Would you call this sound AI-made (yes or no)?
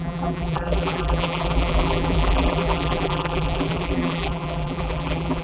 yes